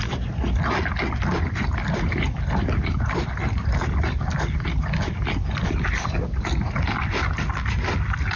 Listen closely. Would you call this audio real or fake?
real